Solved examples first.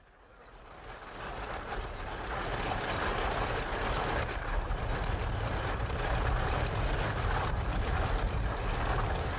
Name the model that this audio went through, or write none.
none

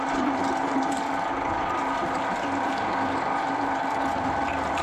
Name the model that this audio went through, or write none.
vocoder, BigVGAN v2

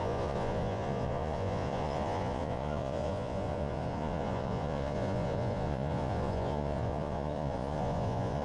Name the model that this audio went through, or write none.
vocoder, Vocos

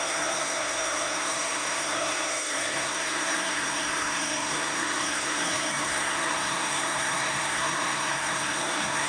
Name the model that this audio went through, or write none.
codec, SNAC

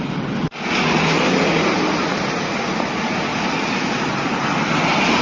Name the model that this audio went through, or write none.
none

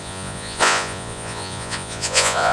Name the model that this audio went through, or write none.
vocoder, Vocos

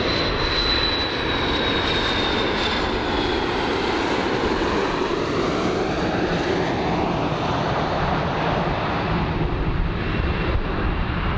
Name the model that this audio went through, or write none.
none